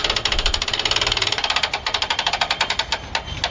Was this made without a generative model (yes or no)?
yes